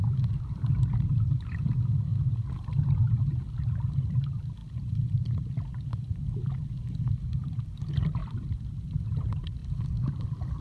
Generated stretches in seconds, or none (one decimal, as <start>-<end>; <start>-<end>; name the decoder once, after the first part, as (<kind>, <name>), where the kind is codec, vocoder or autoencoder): 0.0-9.6 (vocoder, BigVGAN v2); 10.2-10.6